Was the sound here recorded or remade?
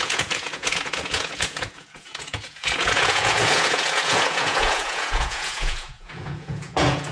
remade